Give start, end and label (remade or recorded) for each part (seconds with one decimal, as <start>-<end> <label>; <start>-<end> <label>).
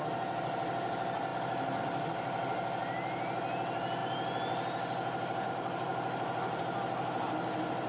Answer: 0.0-7.9 recorded